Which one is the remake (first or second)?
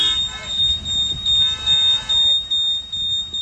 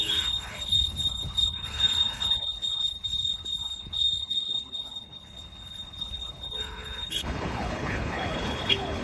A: second